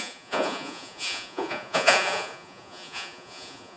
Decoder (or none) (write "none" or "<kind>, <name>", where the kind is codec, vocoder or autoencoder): vocoder, Vocos